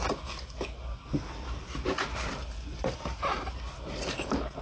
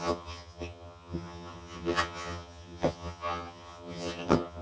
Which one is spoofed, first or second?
second